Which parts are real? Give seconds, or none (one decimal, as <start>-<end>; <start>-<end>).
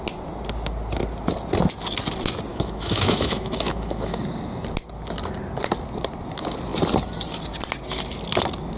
0.0-2.5; 4.2-8.8